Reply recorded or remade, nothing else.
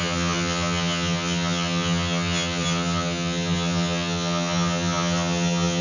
remade